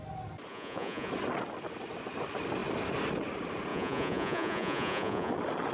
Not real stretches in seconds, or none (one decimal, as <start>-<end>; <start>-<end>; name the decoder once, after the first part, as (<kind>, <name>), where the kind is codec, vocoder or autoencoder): 0.5-1.1 (vocoder, Vocos); 3.7-5.3